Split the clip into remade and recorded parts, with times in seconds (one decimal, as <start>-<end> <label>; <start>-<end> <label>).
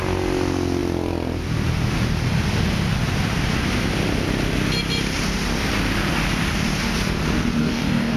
0.0-7.6 recorded; 7.6-8.2 remade